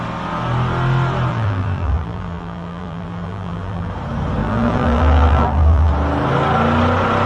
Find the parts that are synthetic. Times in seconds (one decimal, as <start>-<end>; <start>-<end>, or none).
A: 1.3-3.9; 4.4-5.9